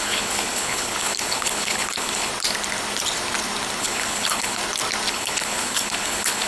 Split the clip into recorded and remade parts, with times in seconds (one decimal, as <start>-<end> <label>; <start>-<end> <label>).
0.0-2.3 remade; 2.3-3.8 recorded; 3.8-4.6 remade; 4.6-5.1 recorded; 5.1-6.5 remade